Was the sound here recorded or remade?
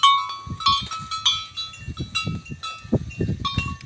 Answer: recorded